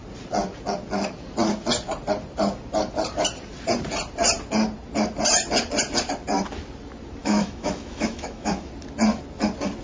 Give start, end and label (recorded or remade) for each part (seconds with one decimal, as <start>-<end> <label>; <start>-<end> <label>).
0.0-7.2 recorded; 7.2-8.7 remade; 8.7-9.8 recorded